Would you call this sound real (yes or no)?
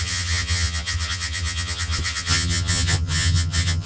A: no